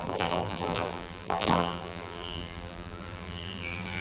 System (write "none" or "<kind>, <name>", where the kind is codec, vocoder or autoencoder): vocoder, BigVGAN v2